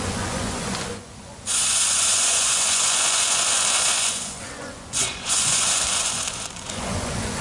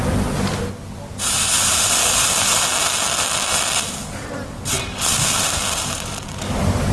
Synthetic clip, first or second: first